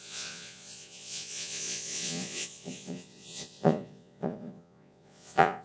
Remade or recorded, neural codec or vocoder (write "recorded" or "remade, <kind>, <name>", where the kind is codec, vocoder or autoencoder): remade, vocoder, Vocos